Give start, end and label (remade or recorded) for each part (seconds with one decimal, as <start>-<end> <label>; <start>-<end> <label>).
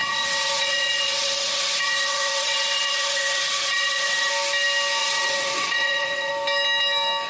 0.0-4.3 remade; 4.3-5.0 recorded; 5.0-6.3 remade; 6.3-7.3 recorded